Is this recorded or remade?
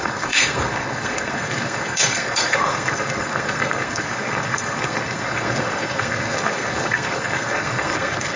remade